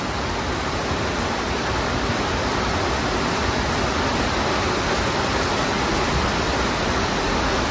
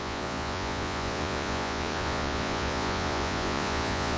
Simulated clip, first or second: second